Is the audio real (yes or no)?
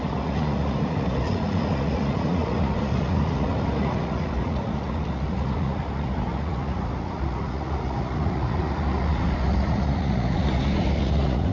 no